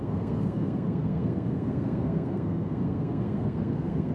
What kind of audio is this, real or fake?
fake